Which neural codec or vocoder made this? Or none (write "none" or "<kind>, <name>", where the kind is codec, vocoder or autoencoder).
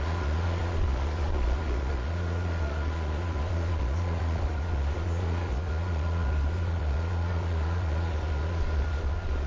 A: vocoder, Vocos